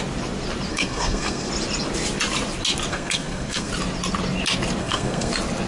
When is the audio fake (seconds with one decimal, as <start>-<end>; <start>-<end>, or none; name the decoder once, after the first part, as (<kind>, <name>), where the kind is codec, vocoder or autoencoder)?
0.7-1.5 (codec, SNAC); 2.9-3.7; 4.8-5.3